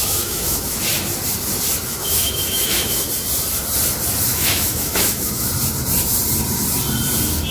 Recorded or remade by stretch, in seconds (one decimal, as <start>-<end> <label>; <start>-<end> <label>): 0.0-0.8 remade; 0.8-1.9 recorded; 1.9-3.1 remade; 3.1-4.3 recorded; 4.3-5.5 remade; 5.5-7.5 recorded